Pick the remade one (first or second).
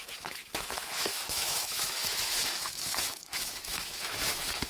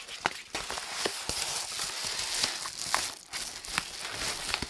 first